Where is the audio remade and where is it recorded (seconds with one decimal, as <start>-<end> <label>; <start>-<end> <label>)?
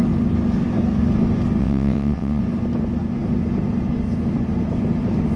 0.0-1.6 recorded; 1.6-2.4 remade; 2.4-5.4 recorded